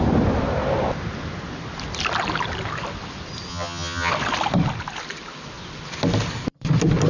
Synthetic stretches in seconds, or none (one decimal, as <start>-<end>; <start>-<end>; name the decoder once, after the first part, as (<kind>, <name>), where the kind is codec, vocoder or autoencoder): 3.5-4.1 (vocoder, HiFi-GAN)